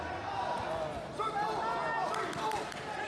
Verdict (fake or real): real